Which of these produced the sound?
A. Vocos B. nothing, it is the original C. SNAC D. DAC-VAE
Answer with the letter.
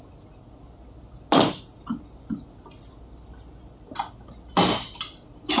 B